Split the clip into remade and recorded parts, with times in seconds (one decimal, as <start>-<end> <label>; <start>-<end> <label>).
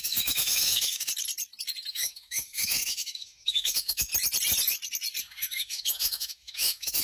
0.0-1.1 remade; 1.1-1.9 recorded; 1.9-4.1 remade; 4.1-5.2 recorded; 5.2-7.0 remade